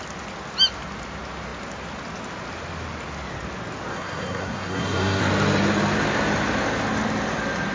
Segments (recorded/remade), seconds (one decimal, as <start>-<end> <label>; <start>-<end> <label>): 0.0-3.9 recorded; 3.9-5.2 remade; 5.2-7.7 recorded